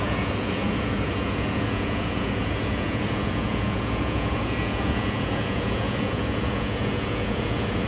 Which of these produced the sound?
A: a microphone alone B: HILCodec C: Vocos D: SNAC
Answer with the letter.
C